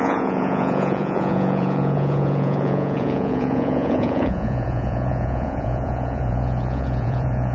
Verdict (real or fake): fake